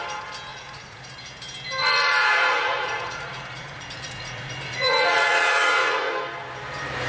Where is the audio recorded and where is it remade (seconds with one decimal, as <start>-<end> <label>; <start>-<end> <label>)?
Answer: 0.0-0.5 recorded; 0.5-1.1 remade; 1.1-1.8 recorded; 1.8-6.1 remade; 6.1-7.1 recorded